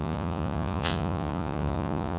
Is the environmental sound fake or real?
fake